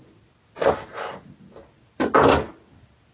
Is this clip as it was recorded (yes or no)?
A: yes